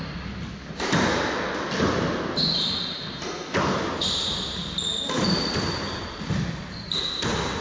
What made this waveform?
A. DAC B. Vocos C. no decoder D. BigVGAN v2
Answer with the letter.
C